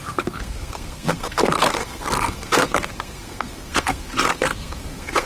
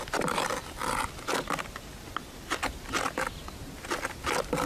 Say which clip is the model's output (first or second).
first